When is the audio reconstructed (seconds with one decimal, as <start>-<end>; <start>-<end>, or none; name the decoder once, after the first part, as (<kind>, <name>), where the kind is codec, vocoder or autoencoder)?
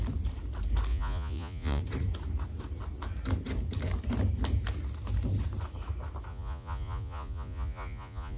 0.9-1.8 (vocoder, Vocos); 6.3-8.4